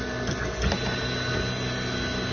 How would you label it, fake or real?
real